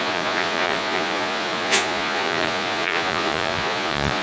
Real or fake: fake